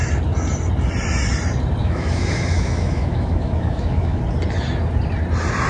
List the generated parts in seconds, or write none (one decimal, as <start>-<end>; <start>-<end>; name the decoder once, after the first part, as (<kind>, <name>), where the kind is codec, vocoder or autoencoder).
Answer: 1.8-4.2 (autoencoder, DAC-VAE)